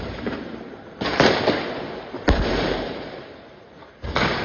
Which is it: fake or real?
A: fake